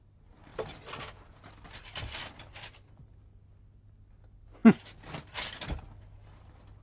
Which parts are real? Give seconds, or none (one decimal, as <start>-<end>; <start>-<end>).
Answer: 0.0-6.8